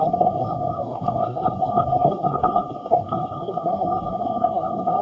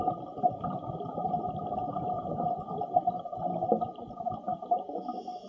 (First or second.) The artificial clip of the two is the first